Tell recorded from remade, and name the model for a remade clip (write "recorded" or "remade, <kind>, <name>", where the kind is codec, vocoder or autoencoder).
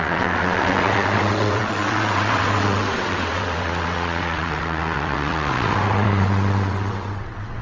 remade, vocoder, WaveNeXt